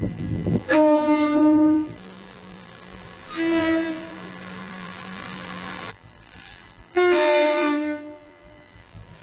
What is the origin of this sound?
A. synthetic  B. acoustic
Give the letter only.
A